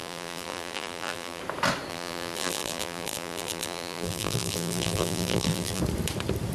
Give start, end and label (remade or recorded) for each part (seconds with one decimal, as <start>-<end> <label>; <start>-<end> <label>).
0.0-1.4 remade; 1.4-1.9 recorded; 1.9-5.8 remade; 5.8-6.5 recorded